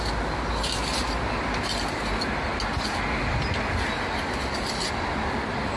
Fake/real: real